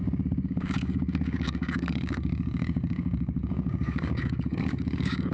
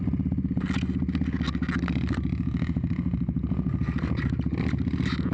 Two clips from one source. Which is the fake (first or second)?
first